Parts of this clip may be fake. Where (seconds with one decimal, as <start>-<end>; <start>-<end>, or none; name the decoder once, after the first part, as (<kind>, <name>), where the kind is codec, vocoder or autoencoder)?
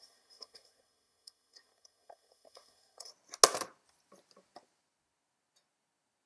0.0-3.1 (codec, SNAC)